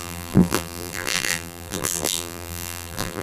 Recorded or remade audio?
remade